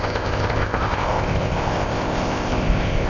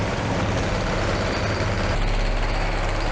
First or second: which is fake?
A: first